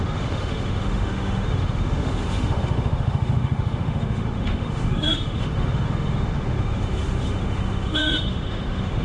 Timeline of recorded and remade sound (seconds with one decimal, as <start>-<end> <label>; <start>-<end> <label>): 0.0-9.0 remade